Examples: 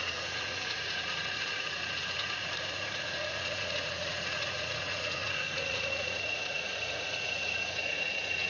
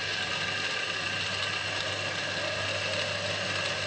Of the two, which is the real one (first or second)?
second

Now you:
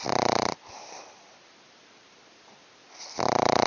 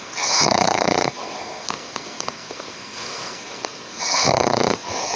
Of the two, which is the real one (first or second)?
first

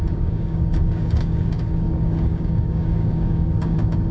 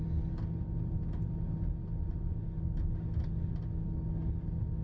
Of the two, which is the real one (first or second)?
second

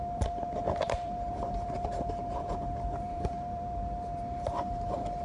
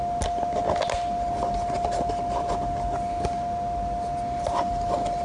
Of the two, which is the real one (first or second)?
second